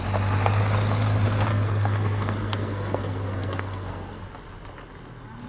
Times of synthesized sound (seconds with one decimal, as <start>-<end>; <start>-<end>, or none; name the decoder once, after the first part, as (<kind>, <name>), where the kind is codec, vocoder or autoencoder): 1.5-4.2 (codec, SNAC)